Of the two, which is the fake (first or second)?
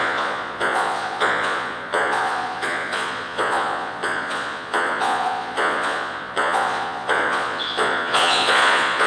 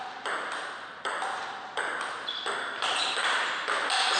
first